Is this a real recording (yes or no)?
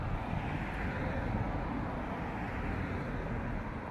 yes